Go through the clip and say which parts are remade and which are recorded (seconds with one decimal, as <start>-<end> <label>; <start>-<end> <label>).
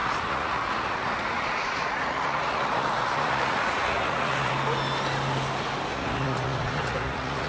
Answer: 0.0-4.5 remade; 4.5-5.9 recorded; 5.9-7.5 remade